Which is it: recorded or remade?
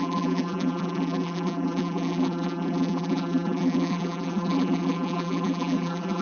remade